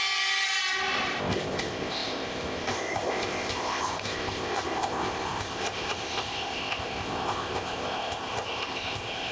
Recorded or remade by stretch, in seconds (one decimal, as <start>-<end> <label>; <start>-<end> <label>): 0.0-1.2 recorded; 1.2-9.3 remade